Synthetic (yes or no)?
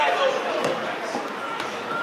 no